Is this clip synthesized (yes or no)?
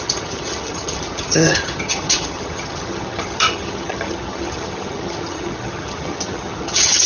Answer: yes